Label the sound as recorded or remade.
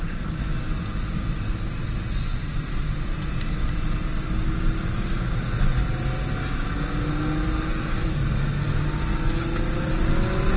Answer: recorded